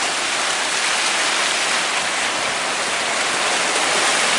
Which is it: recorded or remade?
recorded